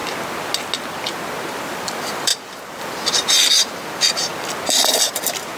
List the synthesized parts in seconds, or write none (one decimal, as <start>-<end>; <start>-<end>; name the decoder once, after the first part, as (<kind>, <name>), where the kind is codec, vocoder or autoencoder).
1.5-4.3 (vocoder, BigVGAN v2); 5.1-5.6